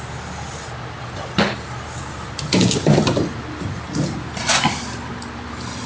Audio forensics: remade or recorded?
recorded